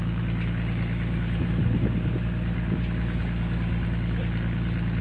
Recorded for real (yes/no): yes